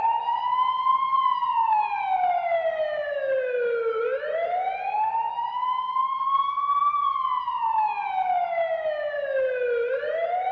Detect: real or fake real